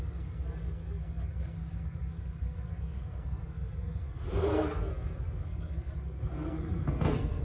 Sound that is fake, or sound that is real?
fake